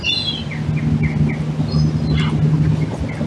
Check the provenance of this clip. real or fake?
real